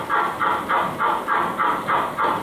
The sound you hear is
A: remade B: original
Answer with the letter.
B